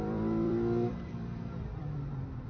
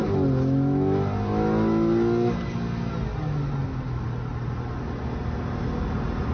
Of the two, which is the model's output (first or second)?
first